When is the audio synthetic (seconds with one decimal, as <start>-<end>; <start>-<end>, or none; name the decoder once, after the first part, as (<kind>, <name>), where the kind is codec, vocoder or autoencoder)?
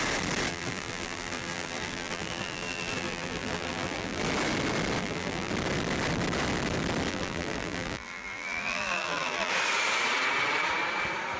0.5-4.2 (vocoder, BigVGAN v2); 5.0-5.5; 7.1-9.5